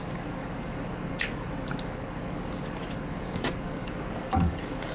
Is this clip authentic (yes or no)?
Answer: no